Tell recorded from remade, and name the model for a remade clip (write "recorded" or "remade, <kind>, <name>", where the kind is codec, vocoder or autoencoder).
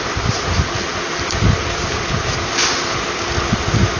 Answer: recorded